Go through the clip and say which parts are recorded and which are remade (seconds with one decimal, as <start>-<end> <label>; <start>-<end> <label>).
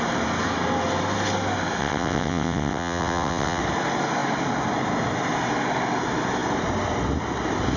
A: 0.0-1.8 recorded; 1.8-3.6 remade; 3.6-7.8 recorded